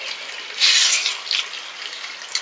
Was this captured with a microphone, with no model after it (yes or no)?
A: yes